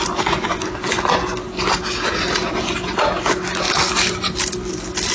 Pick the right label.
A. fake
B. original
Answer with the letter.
B